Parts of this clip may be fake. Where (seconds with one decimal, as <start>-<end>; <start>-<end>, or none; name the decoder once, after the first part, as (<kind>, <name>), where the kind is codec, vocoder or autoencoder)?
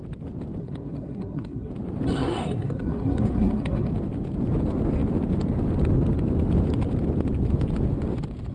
0.6-1.7 (codec, SNAC); 2.1-3.9